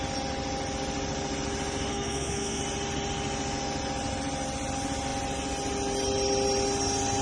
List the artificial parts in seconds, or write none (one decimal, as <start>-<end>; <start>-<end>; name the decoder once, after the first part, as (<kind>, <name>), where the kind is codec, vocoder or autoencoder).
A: 1.9-2.6 (codec, SNAC)